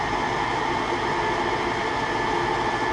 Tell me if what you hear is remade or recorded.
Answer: recorded